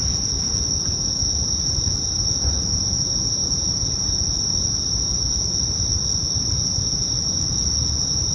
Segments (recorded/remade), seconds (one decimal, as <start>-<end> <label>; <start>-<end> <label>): 0.0-8.3 recorded